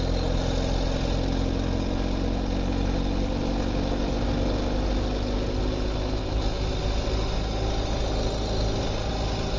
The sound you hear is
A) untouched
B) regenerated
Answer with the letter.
A